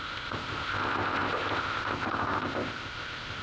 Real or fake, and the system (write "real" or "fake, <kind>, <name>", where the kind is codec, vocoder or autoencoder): fake, codec, ZipCodec